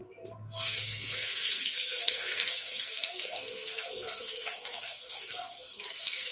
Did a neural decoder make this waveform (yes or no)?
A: yes